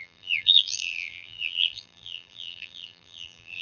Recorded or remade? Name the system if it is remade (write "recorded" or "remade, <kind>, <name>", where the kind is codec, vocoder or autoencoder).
remade, vocoder, BigVGAN v2